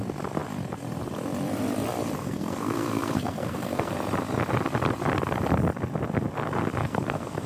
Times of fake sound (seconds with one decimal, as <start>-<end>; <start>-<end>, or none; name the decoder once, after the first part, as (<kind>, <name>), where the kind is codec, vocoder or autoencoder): 2.2-3.9 (codec, SNAC); 6.8-7.5